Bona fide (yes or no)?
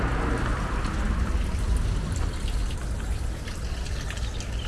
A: yes